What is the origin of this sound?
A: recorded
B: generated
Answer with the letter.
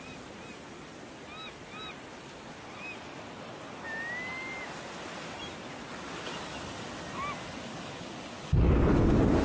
A